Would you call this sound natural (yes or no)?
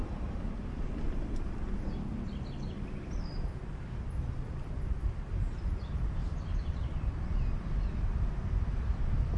no